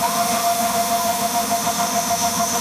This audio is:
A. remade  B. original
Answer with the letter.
A